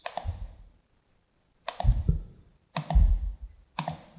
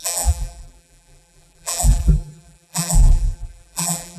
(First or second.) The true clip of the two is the first